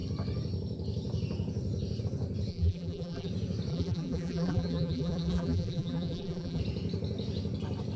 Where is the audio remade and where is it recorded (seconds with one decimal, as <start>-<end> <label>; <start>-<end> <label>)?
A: 0.0-2.5 recorded; 2.5-3.3 remade; 3.3-3.7 recorded; 3.7-6.6 remade; 6.6-8.0 recorded